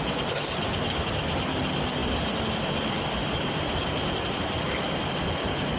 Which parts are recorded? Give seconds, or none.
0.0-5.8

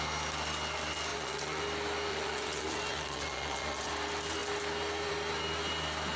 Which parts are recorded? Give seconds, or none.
0.0-1.1; 1.6-2.1; 3.9-6.2

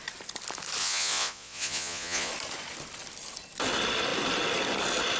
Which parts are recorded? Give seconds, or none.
0.0-0.8; 2.3-5.2